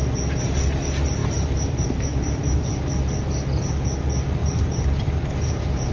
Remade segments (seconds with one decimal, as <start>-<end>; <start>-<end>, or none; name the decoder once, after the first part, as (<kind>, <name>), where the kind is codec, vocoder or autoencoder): 1.2-2.6 (vocoder, BigVGAN v2); 4.4-5.9